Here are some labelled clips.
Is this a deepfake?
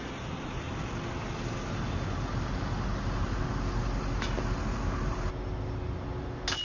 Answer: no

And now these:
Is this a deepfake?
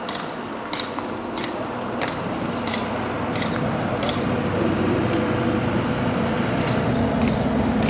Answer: no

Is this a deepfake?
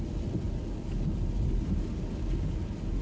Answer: no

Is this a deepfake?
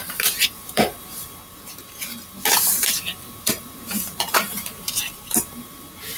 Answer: yes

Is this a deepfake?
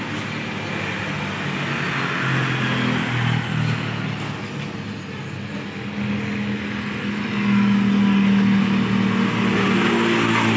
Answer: no